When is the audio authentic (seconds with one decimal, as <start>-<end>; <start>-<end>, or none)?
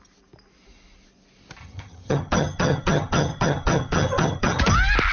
0.0-1.6; 4.6-5.1